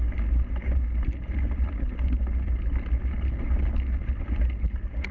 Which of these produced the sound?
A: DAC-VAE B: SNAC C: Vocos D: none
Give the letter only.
D